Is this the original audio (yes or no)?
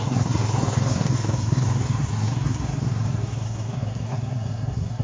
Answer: no